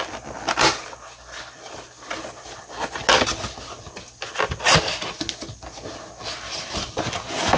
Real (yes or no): yes